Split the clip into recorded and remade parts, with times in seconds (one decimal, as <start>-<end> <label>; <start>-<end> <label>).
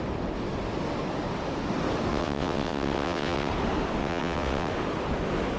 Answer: 0.0-2.1 recorded; 2.1-3.5 remade; 3.5-4.0 recorded; 4.0-4.7 remade; 4.7-5.6 recorded